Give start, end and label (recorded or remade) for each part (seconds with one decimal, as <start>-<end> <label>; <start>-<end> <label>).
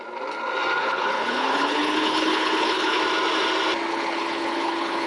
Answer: 0.0-0.8 recorded; 0.8-3.0 remade; 3.0-3.9 recorded; 3.9-5.1 remade